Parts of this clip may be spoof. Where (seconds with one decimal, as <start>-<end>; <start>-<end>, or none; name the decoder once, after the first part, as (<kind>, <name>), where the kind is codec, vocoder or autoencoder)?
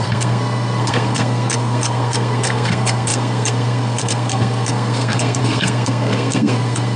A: 0.0-7.0 (codec, SNAC)